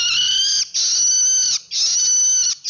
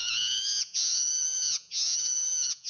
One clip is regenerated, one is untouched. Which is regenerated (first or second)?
second